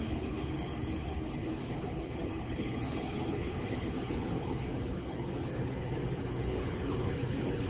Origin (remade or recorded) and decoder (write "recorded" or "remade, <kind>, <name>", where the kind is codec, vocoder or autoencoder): remade, codec, HILCodec